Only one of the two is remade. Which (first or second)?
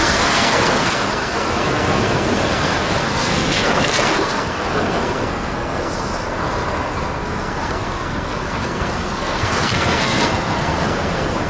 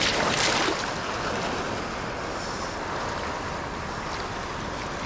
first